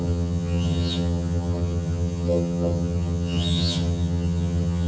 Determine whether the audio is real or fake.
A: fake